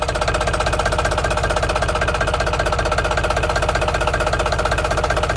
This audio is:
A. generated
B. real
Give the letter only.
B